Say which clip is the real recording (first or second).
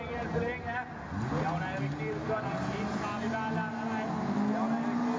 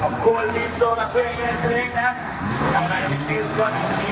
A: first